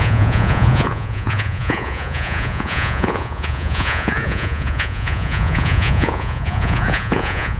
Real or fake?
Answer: fake